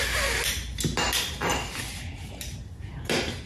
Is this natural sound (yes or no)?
yes